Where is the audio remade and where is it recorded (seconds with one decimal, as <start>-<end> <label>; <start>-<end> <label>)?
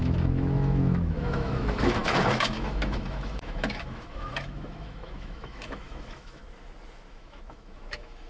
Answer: 0.0-6.4 remade; 6.4-7.1 recorded; 7.1-8.3 remade